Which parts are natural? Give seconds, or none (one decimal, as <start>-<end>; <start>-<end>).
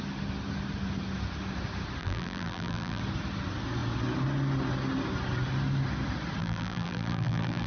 0.0-2.0; 3.0-6.4